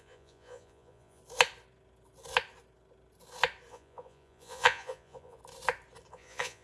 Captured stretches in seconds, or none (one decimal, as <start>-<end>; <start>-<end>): 1.2-3.7; 5.4-6.1